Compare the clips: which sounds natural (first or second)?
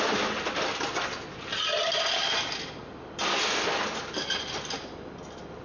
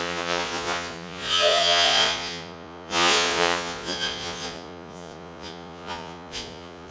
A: first